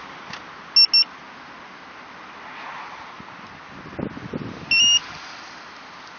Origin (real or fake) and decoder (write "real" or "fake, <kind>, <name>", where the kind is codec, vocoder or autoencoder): real